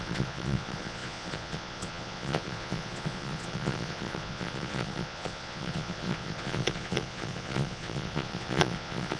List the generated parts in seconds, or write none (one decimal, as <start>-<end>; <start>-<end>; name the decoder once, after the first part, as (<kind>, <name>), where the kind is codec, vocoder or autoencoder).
0.0-9.2 (vocoder, Vocos)